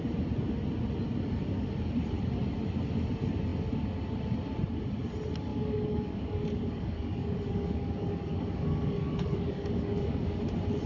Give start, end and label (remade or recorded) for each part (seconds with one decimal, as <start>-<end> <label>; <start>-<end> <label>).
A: 0.0-5.5 recorded; 5.5-10.4 remade; 10.4-10.9 recorded